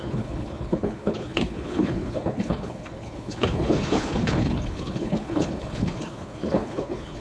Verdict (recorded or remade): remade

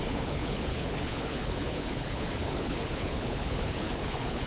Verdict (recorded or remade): remade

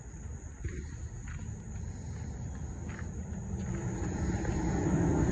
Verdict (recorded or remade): recorded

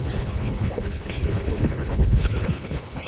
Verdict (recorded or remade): remade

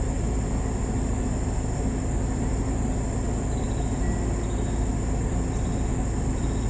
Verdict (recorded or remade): recorded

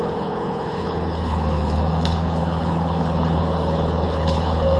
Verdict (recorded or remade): remade